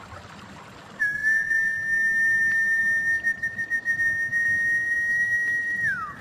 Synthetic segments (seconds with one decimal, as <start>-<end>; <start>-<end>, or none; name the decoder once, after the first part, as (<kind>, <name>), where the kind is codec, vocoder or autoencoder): 5.6-6.2 (vocoder, BigVGAN v2)